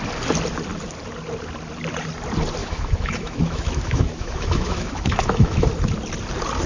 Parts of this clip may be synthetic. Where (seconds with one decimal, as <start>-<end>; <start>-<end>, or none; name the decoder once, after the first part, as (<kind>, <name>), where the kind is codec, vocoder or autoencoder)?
2.6-5.7 (autoencoder, DAC-VAE)